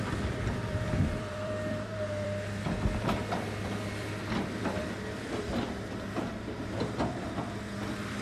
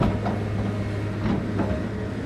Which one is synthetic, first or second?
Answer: first